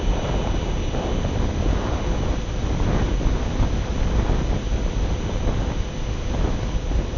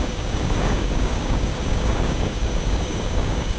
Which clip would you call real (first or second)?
first